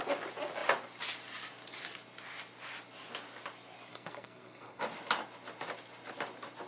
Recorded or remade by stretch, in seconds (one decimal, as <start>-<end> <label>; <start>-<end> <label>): 0.0-3.9 recorded; 3.9-4.8 remade; 4.8-6.7 recorded